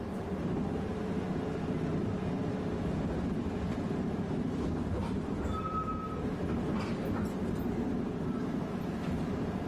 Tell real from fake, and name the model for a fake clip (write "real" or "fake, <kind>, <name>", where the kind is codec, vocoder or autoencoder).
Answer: real